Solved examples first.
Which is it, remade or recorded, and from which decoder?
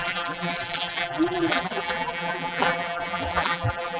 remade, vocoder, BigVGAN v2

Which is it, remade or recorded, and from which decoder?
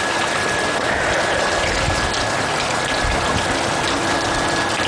recorded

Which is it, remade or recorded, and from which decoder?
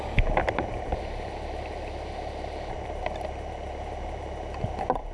recorded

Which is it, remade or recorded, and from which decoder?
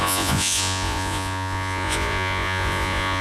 remade, vocoder, Vocos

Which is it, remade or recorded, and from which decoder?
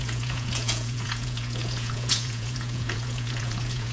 remade, vocoder, Vocos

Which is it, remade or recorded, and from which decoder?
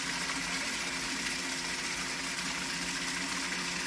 recorded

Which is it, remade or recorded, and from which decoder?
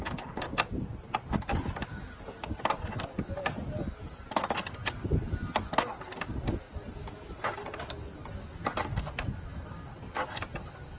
recorded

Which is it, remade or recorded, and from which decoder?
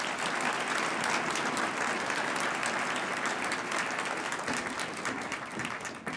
recorded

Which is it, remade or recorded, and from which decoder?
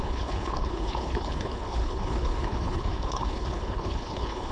remade, codec, HILCodec